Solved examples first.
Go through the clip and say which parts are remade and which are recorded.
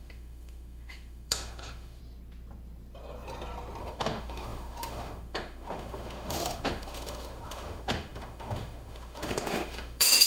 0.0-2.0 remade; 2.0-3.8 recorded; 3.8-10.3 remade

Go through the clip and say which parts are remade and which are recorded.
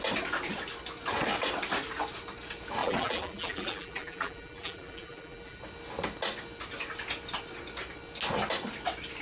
0.0-2.8 recorded; 2.8-5.6 remade; 5.6-9.2 recorded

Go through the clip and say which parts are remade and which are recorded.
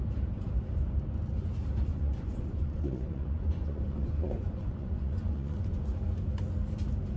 0.0-1.9 recorded; 1.9-6.0 remade; 6.0-7.2 recorded